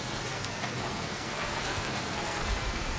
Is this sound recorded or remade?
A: remade